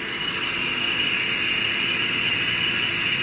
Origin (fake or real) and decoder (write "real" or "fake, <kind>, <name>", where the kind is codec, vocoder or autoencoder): real